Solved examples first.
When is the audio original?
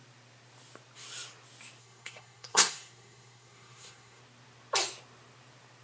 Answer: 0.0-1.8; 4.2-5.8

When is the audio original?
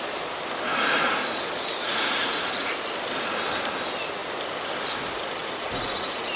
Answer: 0.0-0.7; 2.7-5.4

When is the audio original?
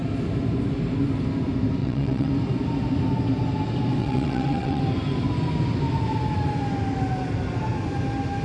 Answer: 0.0-1.8; 2.3-4.0; 4.8-8.4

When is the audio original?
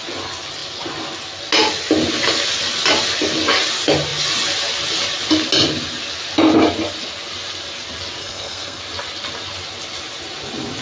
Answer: 0.0-8.2; 8.8-10.8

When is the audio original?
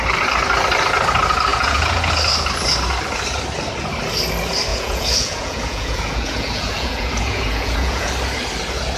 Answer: 0.0-1.5; 2.1-4.7; 8.1-9.0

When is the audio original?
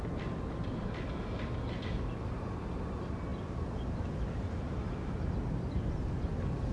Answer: 0.0-6.7